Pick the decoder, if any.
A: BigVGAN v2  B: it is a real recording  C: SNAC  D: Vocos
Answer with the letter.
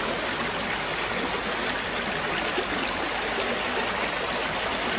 B